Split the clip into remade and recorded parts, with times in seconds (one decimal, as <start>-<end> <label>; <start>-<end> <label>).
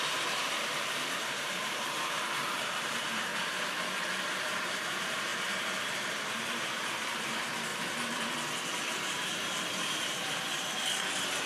0.0-3.3 remade; 3.3-4.2 recorded; 4.2-5.3 remade; 5.3-6.1 recorded; 6.1-7.7 remade; 7.7-8.9 recorded; 8.9-11.5 remade